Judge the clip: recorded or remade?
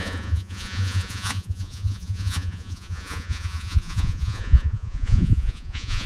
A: remade